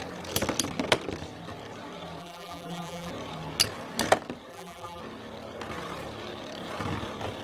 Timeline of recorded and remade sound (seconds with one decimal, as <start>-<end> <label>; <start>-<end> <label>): 0.0-2.2 recorded; 2.2-3.1 remade; 3.1-4.5 recorded; 4.5-5.0 remade; 5.0-7.4 recorded

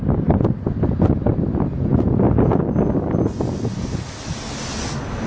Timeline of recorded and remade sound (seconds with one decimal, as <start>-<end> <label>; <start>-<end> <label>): 0.0-5.3 recorded

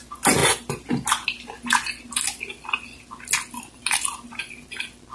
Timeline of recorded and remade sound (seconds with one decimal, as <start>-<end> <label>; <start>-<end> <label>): 0.0-5.1 recorded

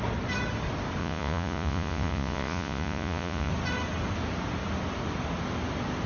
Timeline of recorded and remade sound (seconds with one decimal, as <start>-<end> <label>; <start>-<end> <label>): 0.0-1.0 recorded; 1.0-3.5 remade; 3.5-6.1 recorded

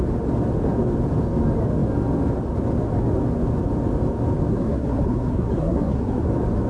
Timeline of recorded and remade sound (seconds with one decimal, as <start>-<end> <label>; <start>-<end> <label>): 0.0-4.5 recorded; 4.5-6.3 remade; 6.3-6.7 recorded

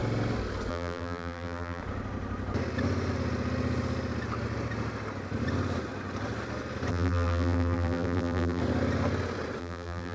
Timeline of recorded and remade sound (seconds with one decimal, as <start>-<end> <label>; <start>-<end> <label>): 0.0-0.7 recorded; 0.7-1.8 remade; 1.8-6.9 recorded; 6.9-8.6 remade; 8.6-9.6 recorded; 9.6-10.1 remade

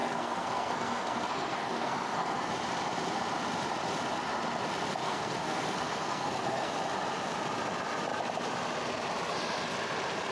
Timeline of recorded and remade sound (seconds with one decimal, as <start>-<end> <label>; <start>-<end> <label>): 0.0-2.5 remade; 2.5-5.0 recorded; 5.0-6.7 remade; 6.7-10.3 recorded

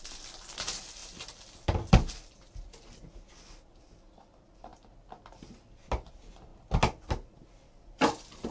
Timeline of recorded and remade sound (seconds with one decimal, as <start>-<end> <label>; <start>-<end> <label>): 0.0-8.5 recorded